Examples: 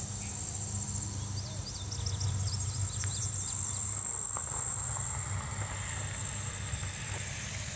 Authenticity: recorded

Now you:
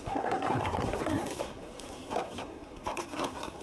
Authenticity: remade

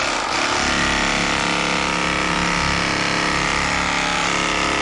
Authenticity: recorded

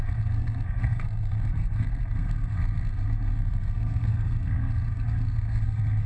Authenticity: remade